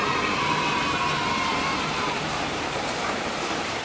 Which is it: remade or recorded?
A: remade